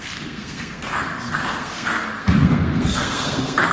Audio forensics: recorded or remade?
remade